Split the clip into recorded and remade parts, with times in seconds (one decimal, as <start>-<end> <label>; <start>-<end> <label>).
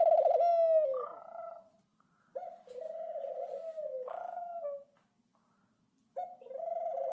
0.0-7.1 recorded